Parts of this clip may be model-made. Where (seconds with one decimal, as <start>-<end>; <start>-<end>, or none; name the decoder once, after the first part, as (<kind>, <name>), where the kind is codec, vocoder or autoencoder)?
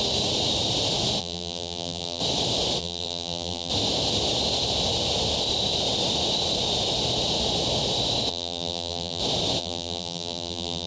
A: 1.2-2.2 (vocoder, BigVGAN v2); 2.8-3.7; 8.3-9.2; 9.6-10.9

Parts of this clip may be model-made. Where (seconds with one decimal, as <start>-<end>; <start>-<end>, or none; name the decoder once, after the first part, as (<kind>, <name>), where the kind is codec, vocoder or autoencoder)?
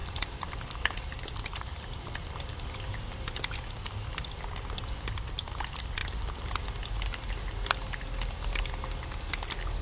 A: 0.0-1.2 (vocoder, BigVGAN v2); 1.7-2.4; 6.0-6.6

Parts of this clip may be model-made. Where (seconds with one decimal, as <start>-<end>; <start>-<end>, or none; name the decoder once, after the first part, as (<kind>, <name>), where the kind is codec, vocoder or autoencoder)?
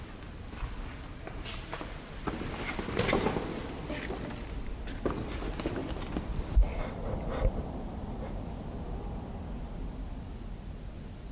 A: 5.8-7.5 (vocoder, BigVGAN v2)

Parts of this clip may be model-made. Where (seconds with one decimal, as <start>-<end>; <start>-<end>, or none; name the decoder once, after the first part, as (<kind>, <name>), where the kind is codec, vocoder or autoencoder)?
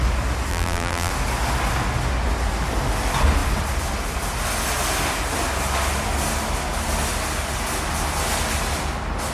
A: 0.5-1.1 (vocoder, BigVGAN v2)